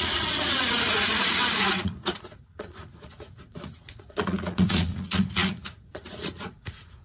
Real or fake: fake